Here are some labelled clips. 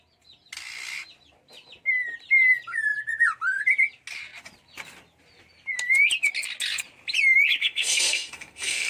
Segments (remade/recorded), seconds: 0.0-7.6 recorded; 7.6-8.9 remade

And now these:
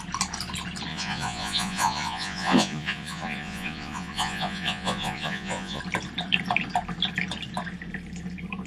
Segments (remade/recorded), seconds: 0.0-0.9 recorded; 0.9-5.8 remade; 5.8-8.7 recorded